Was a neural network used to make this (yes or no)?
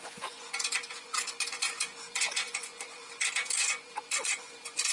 yes